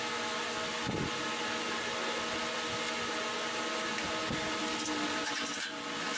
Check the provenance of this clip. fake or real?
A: real